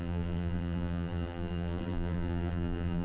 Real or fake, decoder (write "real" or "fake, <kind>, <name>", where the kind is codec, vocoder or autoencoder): fake, vocoder, BigVGAN v2